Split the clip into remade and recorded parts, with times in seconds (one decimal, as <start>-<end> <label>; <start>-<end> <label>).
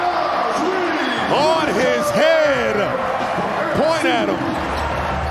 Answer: 0.0-5.3 recorded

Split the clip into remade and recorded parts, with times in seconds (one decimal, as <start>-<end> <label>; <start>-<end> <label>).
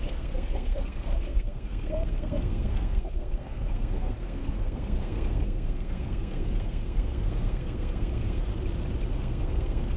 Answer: 0.0-8.5 remade; 8.5-9.1 recorded; 9.1-10.0 remade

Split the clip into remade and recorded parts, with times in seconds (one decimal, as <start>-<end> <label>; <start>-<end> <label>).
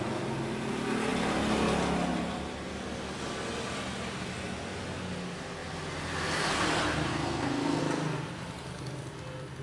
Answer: 0.0-7.1 recorded; 7.1-7.8 remade; 7.8-9.6 recorded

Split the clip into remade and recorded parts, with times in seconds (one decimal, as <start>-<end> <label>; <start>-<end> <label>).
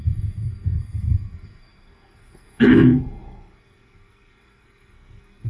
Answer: 0.0-5.5 remade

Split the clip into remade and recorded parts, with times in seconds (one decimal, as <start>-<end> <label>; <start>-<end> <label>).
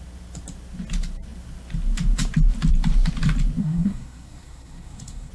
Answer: 0.0-3.6 recorded; 3.6-5.3 remade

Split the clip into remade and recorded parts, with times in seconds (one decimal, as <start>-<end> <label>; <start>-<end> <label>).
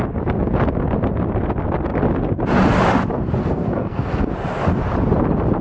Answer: 0.0-3.4 recorded; 3.4-4.3 remade; 4.3-5.6 recorded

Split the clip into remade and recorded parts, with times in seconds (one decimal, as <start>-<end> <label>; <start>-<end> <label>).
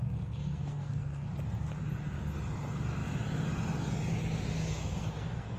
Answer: 0.0-1.3 remade; 1.3-4.7 recorded; 4.7-5.6 remade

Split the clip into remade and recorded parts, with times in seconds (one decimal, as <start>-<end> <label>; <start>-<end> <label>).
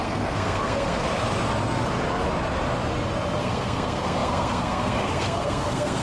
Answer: 0.0-1.0 remade; 1.0-3.4 recorded; 3.4-6.0 remade